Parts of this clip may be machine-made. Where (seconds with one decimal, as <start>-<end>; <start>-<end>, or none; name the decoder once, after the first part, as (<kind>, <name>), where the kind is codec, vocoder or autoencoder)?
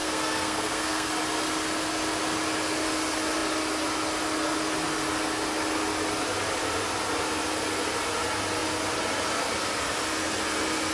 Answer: 0.0-1.1 (codec, SNAC)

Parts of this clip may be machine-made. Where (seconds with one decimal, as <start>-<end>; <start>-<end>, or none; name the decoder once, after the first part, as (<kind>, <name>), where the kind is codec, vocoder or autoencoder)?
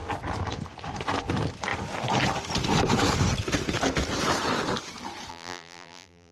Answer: 5.3-6.3 (vocoder, BigVGAN v2)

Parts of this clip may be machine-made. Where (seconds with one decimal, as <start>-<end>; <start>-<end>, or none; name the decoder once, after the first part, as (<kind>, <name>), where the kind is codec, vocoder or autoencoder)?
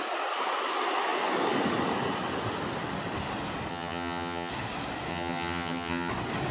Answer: 3.7-4.5 (vocoder, HiFi-GAN); 5.1-6.1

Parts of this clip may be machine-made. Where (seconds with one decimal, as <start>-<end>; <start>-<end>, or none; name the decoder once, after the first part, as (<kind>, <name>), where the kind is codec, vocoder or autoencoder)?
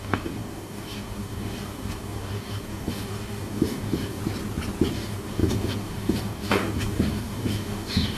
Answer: 0.0-4.2 (codec, DAC); 4.9-8.2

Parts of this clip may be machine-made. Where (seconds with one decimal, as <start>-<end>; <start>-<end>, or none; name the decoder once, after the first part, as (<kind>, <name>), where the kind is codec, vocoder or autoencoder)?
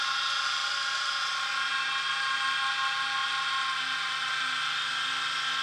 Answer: 0.6-1.3 (vocoder, BigVGAN v2)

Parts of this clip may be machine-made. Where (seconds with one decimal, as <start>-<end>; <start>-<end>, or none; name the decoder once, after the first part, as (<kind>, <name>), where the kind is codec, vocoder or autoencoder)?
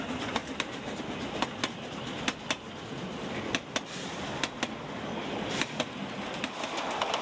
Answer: 0.4-1.0 (vocoder, BigVGAN v2)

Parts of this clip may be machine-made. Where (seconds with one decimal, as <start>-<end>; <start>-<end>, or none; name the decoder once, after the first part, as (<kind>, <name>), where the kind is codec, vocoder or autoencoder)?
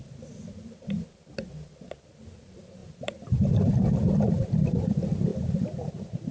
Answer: 0.0-2.2 (vocoder, BigVGAN v2); 2.8-3.7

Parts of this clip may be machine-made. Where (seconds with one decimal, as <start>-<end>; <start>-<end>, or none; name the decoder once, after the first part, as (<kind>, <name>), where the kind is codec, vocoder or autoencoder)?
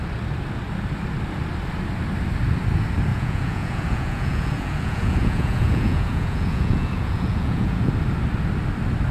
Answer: 3.1-7.9 (vocoder, Vocos)